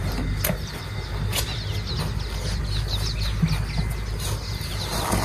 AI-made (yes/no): no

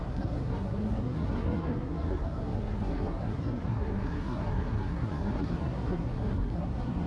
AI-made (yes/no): yes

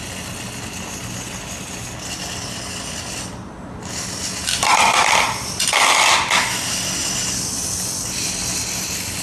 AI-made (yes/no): no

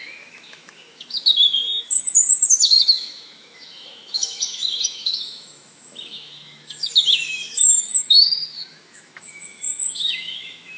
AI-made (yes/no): yes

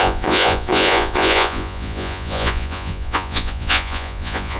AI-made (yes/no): yes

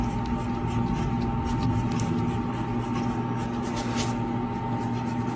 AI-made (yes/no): no